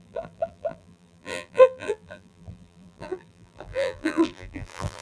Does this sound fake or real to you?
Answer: fake